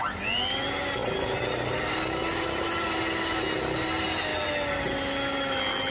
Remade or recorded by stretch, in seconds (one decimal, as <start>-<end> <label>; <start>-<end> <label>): 0.0-5.9 recorded